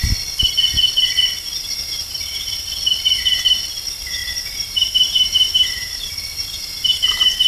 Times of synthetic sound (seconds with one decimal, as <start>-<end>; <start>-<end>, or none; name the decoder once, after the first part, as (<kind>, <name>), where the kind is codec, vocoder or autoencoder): 4.2-7.1 (vocoder, BigVGAN v2)